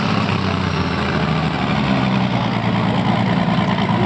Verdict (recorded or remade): recorded